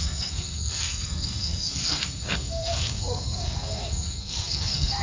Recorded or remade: remade